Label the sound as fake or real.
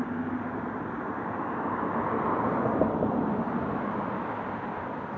real